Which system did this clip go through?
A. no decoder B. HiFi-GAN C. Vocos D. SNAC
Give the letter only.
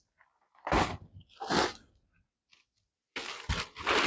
A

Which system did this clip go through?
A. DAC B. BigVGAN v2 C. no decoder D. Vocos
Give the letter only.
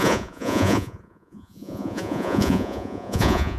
D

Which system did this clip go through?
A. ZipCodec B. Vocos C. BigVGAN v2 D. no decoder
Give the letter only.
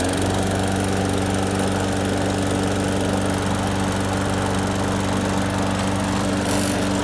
D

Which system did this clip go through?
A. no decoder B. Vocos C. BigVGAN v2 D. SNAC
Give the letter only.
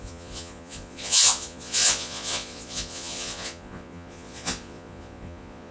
B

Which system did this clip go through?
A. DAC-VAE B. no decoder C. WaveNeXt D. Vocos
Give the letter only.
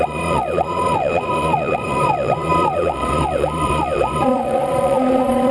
D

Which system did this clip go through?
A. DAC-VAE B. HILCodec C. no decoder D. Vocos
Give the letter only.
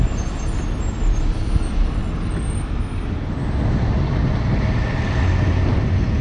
C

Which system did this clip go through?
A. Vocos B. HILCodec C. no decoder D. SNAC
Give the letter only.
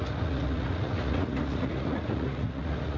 A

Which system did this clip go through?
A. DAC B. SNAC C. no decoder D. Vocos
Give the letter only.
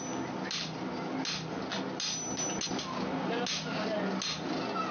C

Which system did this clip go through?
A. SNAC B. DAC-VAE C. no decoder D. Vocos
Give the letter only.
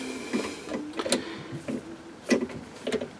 C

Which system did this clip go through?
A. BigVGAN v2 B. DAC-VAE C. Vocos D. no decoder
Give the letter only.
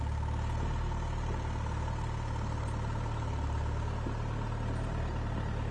D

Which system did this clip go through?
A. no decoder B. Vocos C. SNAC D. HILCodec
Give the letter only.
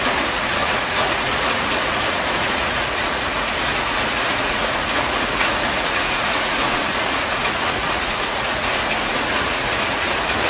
B